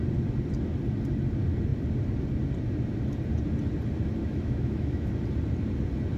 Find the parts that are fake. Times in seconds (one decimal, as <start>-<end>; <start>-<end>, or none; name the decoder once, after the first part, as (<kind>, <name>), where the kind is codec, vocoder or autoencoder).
4.2-5.1 (autoencoder, DAC-VAE)